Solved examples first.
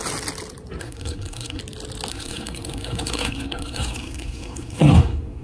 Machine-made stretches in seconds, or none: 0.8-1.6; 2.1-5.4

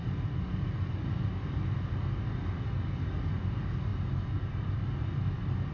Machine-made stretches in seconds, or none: none